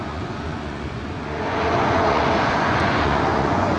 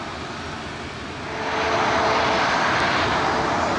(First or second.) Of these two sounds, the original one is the second